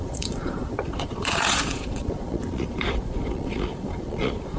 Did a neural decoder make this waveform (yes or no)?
yes